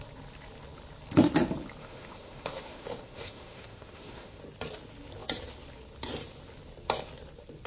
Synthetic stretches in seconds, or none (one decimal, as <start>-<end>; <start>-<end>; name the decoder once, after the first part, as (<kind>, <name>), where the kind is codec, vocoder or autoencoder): 1.8-4.4 (autoencoder, DAC-VAE)